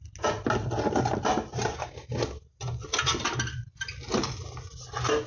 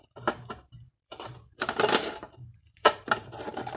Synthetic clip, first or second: second